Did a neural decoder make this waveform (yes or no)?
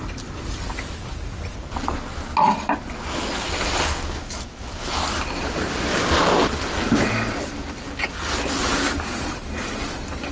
no